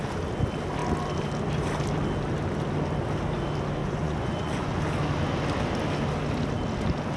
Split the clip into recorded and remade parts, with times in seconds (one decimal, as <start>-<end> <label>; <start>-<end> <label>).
0.0-3.8 recorded; 3.8-4.7 remade; 4.7-7.2 recorded